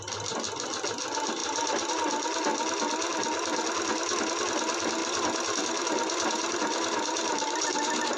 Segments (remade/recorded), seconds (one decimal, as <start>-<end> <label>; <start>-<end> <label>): 0.0-1.4 recorded; 1.4-1.9 remade; 1.9-5.0 recorded; 5.0-8.2 remade